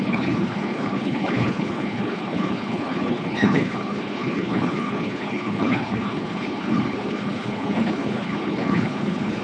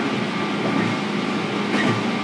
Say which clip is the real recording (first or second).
second